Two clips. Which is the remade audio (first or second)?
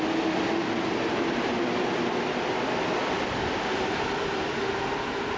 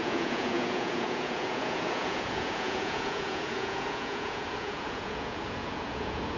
second